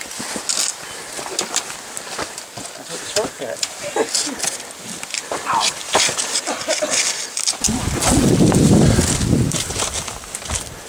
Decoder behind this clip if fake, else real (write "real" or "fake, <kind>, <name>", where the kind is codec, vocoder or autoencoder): real